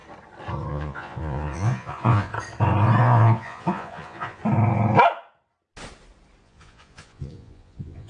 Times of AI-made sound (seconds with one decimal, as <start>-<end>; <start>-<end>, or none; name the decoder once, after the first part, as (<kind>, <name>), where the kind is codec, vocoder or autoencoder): 0.7-2.3 (vocoder, Vocos); 3.0-4.4; 6.4-8.1